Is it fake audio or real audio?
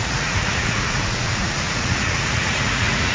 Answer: fake